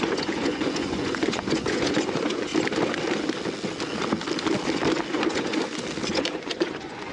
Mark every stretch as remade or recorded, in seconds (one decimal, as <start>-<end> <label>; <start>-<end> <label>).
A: 0.0-2.5 remade; 2.5-5.1 recorded; 5.1-5.6 remade; 5.6-6.1 recorded; 6.1-7.1 remade